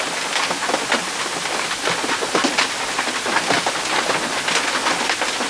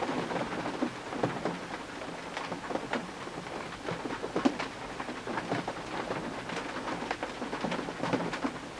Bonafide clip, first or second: first